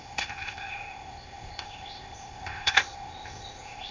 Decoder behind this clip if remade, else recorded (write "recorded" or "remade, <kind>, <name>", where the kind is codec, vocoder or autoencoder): remade, codec, ZipCodec